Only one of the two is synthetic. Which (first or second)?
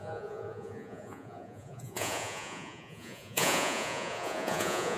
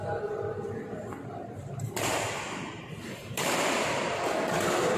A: first